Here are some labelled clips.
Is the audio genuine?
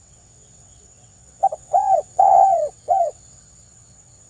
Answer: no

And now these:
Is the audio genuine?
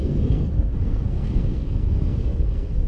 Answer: no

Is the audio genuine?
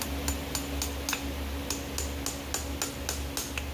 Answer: yes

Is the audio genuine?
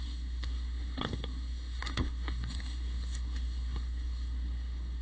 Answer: no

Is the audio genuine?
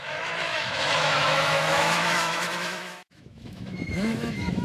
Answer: no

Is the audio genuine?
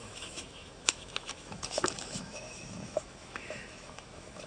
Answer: no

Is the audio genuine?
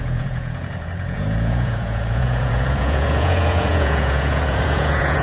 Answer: no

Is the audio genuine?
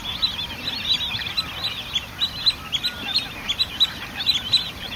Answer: yes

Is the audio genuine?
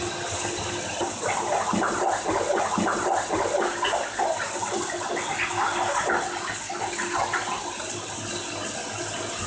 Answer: yes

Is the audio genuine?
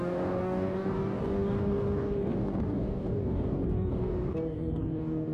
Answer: no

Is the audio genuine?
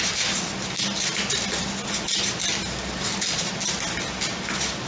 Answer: yes